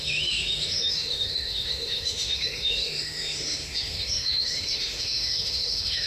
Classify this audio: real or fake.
fake